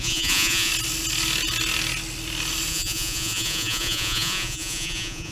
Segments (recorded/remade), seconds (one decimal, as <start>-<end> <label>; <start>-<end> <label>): 0.0-0.7 remade; 0.7-2.7 recorded; 2.7-5.3 remade